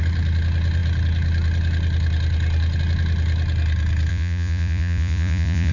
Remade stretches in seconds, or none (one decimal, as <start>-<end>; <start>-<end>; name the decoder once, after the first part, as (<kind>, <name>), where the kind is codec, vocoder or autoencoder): 4.1-5.7 (vocoder, Vocos)